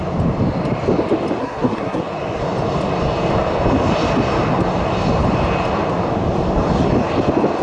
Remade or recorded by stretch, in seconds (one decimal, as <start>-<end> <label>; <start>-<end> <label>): 0.0-1.4 recorded; 1.4-2.0 remade; 2.0-7.6 recorded